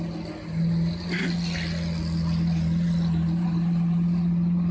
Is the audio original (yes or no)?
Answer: yes